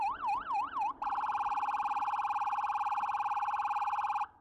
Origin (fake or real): fake